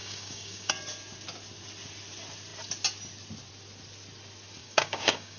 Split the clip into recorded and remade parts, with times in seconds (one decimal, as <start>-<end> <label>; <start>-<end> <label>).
0.0-0.7 remade; 0.7-4.6 recorded; 4.6-5.4 remade